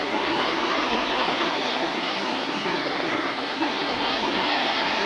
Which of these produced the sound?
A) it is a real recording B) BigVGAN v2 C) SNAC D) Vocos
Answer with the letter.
C